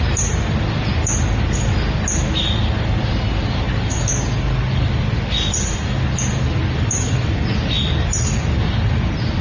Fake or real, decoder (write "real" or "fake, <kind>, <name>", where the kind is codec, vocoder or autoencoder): real